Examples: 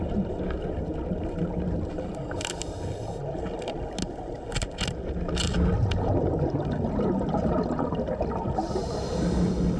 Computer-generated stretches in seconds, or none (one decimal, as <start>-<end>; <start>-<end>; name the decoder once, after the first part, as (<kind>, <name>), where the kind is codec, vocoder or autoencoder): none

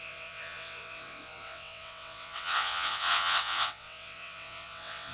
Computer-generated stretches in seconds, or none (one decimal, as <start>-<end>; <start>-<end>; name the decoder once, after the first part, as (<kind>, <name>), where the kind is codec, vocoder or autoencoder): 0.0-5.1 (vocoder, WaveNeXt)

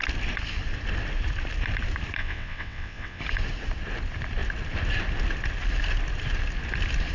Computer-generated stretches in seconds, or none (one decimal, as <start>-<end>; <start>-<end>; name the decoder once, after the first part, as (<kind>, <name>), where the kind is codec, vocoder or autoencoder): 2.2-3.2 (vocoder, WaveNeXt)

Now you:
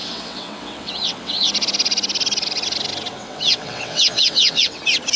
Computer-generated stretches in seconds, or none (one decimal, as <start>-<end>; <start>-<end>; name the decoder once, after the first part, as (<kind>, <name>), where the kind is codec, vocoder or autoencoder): 0.0-1.5 (vocoder, WaveNeXt); 3.1-4.8

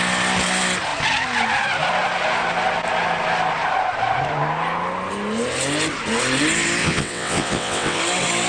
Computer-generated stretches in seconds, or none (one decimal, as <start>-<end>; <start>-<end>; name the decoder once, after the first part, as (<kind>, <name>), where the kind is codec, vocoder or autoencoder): 6.8-8.0 (vocoder, WaveNeXt)

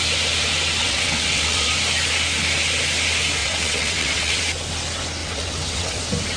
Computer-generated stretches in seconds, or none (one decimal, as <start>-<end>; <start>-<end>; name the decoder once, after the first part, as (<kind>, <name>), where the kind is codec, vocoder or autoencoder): 0.8-1.7 (vocoder, WaveNeXt); 3.4-4.4; 5.2-6.0

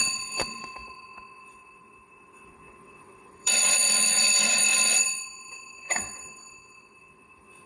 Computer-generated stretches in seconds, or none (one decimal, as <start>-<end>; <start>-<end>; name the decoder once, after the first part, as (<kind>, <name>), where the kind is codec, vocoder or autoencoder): 0.0-7.7 (vocoder, WaveNeXt)